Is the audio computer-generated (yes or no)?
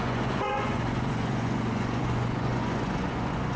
yes